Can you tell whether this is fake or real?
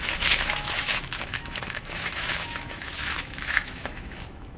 fake